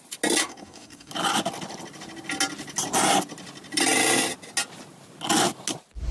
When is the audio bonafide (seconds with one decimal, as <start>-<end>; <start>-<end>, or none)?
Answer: 0.0-0.4; 1.1-6.1